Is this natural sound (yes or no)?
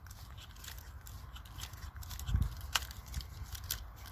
yes